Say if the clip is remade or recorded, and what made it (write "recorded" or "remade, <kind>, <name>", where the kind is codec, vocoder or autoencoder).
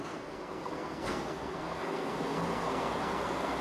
remade, codec, SNAC